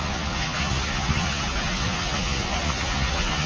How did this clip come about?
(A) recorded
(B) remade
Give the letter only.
B